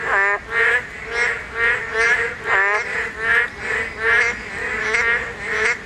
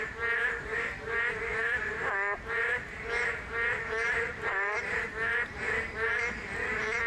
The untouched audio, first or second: first